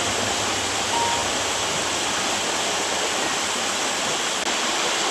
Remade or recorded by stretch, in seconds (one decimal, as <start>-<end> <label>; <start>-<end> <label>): 0.0-5.1 recorded